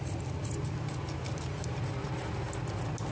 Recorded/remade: recorded